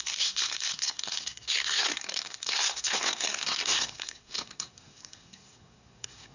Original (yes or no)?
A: no